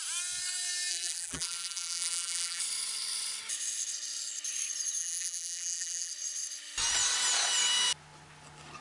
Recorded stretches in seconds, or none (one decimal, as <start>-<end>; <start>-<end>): 0.0-0.9; 2.6-5.0; 6.1-8.8